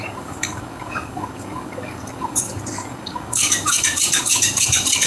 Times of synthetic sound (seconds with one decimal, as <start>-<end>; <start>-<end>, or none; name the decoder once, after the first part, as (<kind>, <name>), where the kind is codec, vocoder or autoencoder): 0.0-5.1 (codec, DAC)